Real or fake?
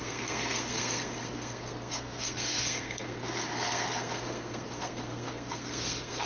fake